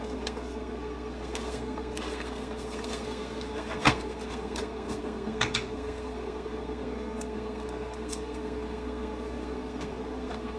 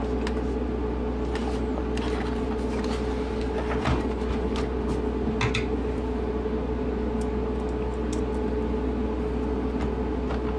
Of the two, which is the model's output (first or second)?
first